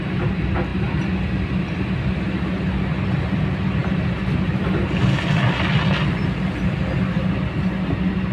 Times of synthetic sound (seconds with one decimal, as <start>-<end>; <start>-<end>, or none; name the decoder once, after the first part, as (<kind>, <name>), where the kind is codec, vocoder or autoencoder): none